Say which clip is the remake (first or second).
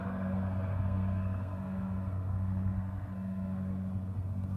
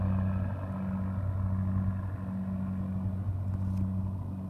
first